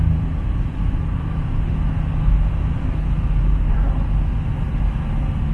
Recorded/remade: recorded